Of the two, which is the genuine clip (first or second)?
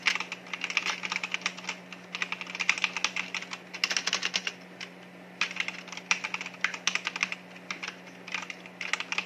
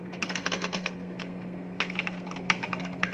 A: first